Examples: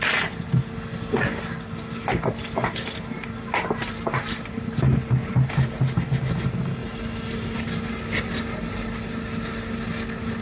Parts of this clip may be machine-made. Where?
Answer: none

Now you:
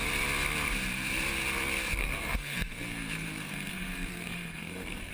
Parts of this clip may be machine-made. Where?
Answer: 2.0-5.1 (codec, SNAC)